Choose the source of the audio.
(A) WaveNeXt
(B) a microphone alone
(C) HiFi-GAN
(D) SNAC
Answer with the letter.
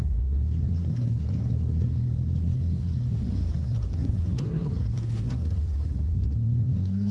D